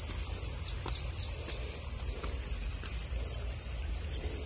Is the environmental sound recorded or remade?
remade